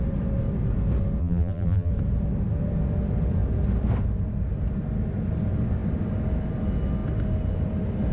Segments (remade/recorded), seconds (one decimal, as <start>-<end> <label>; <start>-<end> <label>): 0.0-1.2 recorded; 1.2-1.9 remade; 1.9-8.1 recorded